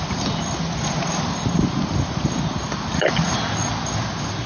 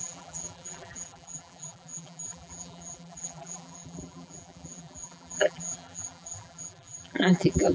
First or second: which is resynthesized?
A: second